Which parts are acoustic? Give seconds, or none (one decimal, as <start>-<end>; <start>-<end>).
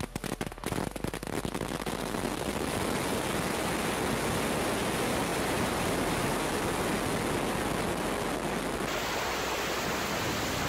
0.0-5.3; 5.8-10.7